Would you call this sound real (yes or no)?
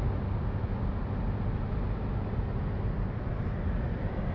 yes